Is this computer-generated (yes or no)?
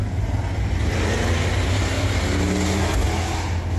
no